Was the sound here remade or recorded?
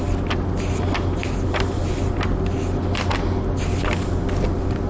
recorded